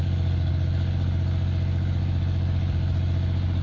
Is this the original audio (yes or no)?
yes